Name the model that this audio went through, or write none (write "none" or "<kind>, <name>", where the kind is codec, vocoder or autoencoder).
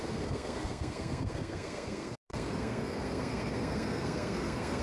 codec, SNAC